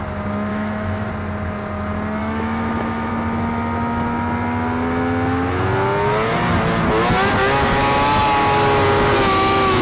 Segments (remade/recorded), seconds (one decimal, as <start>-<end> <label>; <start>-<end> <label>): 0.0-0.5 recorded; 0.5-1.1 remade; 1.1-2.2 recorded; 2.2-3.1 remade; 3.1-9.8 recorded